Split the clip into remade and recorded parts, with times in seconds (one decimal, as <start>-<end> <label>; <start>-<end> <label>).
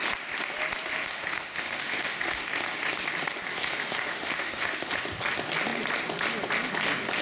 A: 0.0-1.0 recorded; 1.0-3.0 remade; 3.0-3.5 recorded; 3.5-4.9 remade; 4.9-7.2 recorded